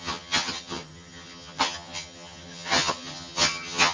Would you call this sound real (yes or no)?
no